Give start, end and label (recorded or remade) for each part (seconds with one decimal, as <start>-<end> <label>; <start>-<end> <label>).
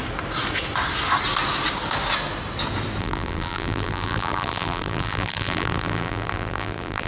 0.0-3.0 recorded; 3.0-7.1 remade